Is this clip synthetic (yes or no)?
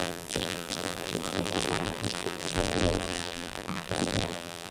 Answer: yes